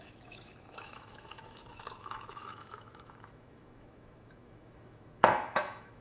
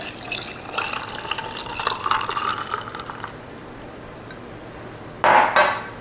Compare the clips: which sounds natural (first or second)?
second